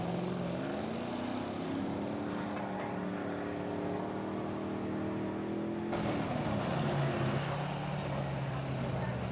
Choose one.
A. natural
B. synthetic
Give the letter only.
A